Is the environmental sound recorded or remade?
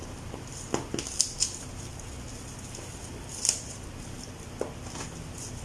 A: recorded